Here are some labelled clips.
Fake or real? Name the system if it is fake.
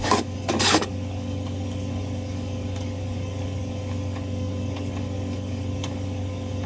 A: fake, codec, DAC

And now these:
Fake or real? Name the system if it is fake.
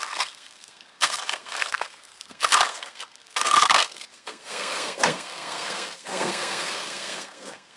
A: fake, codec, SNAC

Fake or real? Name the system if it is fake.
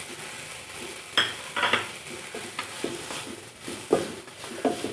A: real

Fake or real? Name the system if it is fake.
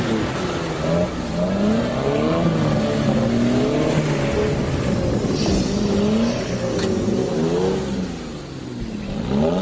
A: real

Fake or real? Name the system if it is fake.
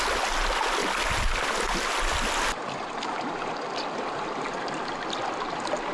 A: real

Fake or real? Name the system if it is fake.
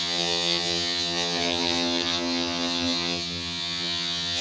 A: fake, vocoder, HiFi-GAN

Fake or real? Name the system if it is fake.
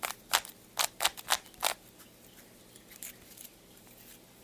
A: real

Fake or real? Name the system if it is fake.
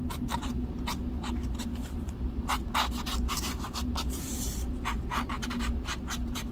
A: fake, vocoder, BigVGAN v2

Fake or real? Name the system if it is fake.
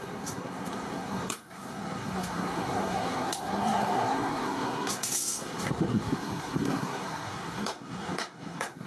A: fake, codec, SNAC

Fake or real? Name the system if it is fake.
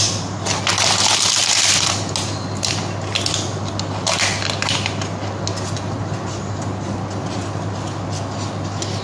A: real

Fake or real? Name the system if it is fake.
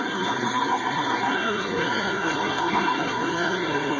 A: fake, codec, SNAC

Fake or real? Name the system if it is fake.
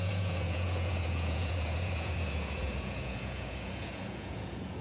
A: fake, vocoder, Vocos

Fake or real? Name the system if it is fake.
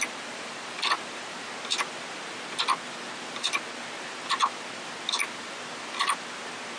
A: real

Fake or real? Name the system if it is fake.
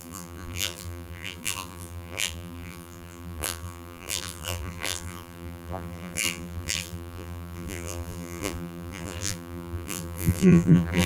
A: fake, vocoder, BigVGAN v2